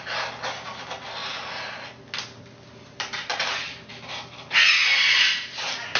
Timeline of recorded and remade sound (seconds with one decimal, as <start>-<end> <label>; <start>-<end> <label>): 0.0-6.0 recorded